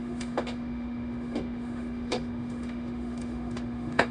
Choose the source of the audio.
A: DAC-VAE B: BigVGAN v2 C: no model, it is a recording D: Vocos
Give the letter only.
A